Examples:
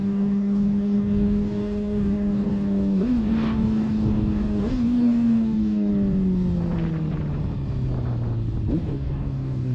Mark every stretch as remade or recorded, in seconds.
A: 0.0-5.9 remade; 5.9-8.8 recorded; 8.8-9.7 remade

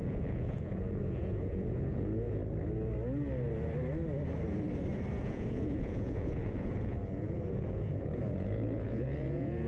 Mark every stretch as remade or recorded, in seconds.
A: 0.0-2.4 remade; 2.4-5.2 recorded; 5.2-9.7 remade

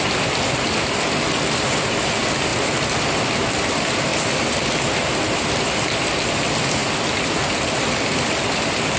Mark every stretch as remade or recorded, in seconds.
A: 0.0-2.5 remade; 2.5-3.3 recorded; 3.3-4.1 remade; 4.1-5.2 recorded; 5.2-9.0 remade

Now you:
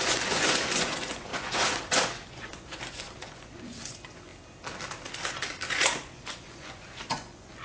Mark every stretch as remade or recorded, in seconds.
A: 0.0-4.3 remade; 4.3-5.7 recorded; 5.7-7.6 remade

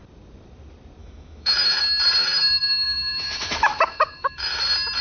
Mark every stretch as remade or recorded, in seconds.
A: 0.0-1.0 recorded; 1.0-1.8 remade; 1.8-2.2 recorded; 2.2-4.6 remade; 4.6-5.0 recorded

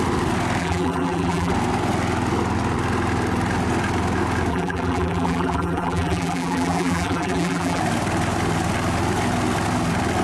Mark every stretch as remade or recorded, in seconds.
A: 0.0-0.6 recorded; 0.6-1.5 remade; 1.5-4.5 recorded; 4.5-7.8 remade; 7.8-10.2 recorded